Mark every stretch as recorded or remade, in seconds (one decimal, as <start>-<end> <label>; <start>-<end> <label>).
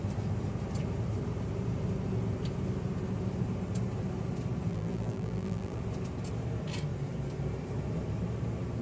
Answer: 0.0-4.7 recorded; 4.7-5.8 remade; 5.8-8.8 recorded